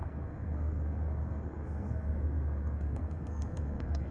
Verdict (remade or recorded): remade